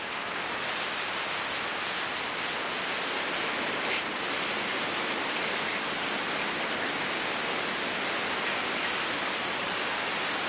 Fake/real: real